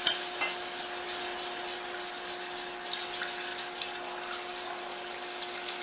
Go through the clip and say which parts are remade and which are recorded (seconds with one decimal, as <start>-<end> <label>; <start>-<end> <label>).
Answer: 0.0-5.8 recorded